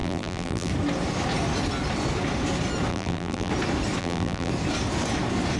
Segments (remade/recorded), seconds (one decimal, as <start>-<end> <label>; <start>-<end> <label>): 0.0-0.7 remade; 0.7-2.9 recorded; 2.9-3.5 remade; 3.5-4.0 recorded; 4.0-4.5 remade; 4.5-5.6 recorded